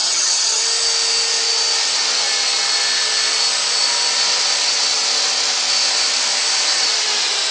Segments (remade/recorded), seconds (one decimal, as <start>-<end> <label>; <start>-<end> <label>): 0.0-0.6 remade; 0.6-7.5 recorded